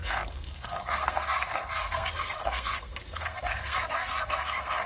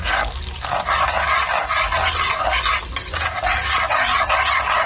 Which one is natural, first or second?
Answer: second